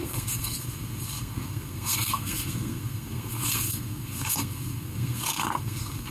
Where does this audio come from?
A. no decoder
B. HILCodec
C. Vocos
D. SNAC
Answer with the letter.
D